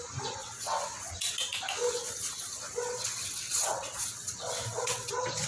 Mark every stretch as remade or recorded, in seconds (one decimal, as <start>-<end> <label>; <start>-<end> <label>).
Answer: 0.0-0.4 recorded; 0.4-1.1 remade; 1.1-1.8 recorded; 1.8-5.1 remade; 5.1-5.5 recorded

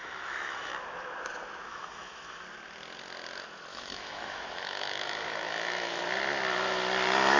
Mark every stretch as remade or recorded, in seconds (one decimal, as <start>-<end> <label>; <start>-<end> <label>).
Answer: 0.0-0.7 remade; 0.7-1.7 recorded; 1.7-2.4 remade; 2.4-3.7 recorded; 3.7-6.0 remade; 6.0-7.4 recorded

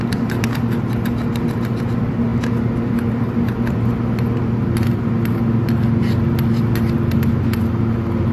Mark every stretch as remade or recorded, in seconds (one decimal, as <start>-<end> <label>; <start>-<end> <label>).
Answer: 0.0-8.3 recorded